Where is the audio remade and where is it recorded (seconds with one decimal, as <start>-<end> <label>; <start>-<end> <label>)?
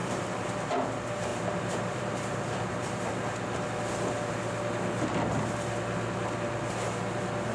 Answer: 0.0-0.5 remade; 0.5-1.3 recorded; 1.3-3.1 remade; 3.1-7.5 recorded